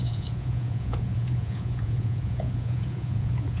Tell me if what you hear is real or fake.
fake